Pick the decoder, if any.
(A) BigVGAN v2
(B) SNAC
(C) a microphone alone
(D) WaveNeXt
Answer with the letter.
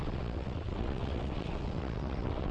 D